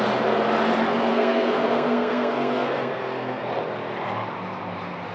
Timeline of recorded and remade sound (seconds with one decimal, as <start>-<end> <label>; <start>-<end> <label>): 0.0-1.1 recorded; 1.1-3.5 remade; 3.5-5.1 recorded